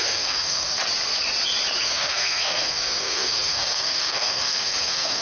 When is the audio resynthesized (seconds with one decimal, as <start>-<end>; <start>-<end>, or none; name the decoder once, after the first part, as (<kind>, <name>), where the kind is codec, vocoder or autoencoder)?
0.0-0.8 (codec, SNAC); 1.8-5.2